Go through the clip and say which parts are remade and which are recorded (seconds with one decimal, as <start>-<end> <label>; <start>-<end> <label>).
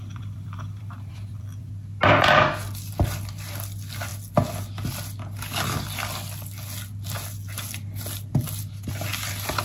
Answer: 0.0-1.7 remade; 1.7-9.6 recorded